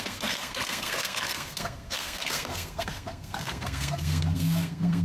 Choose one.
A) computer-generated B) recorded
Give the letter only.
A